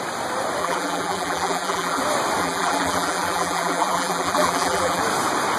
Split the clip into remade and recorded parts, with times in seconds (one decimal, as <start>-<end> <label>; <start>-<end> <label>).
0.0-0.6 recorded; 0.6-2.0 remade; 2.0-2.4 recorded; 2.4-5.0 remade; 5.0-5.6 recorded

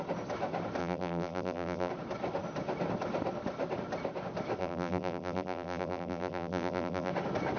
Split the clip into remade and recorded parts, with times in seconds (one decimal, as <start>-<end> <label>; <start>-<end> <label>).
0.0-0.8 recorded; 0.8-1.9 remade; 1.9-4.6 recorded; 4.6-7.1 remade; 7.1-7.6 recorded

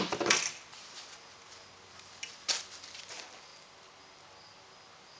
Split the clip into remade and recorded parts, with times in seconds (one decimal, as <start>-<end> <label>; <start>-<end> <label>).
0.0-5.2 recorded